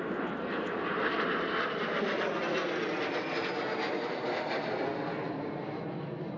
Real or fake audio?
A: real